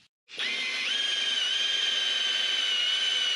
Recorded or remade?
recorded